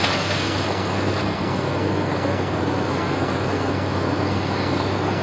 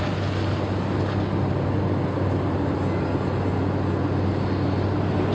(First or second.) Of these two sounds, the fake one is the first